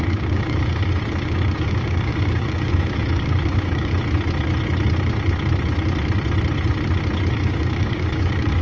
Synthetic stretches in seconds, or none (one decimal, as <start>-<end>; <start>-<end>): 0.0-3.9; 7.3-8.6